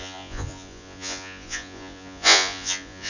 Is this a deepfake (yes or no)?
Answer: yes